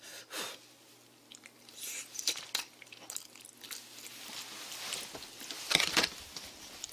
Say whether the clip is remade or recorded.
recorded